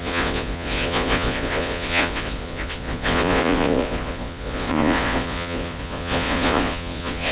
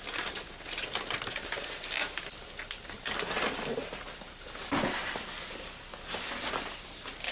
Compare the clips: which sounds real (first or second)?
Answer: second